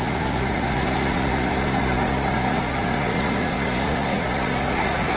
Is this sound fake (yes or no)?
yes